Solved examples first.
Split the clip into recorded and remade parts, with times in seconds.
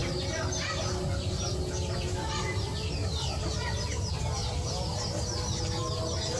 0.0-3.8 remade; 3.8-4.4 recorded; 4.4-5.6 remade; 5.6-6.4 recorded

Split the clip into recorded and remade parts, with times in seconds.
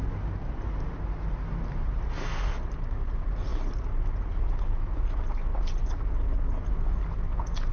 0.0-5.5 recorded; 5.5-6.0 remade; 6.0-7.7 recorded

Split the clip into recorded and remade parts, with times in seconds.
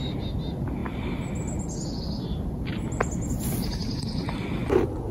0.0-5.1 recorded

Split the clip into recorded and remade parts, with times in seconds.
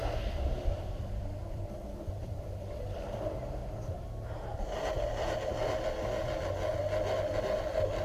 0.0-3.0 remade; 3.0-8.0 recorded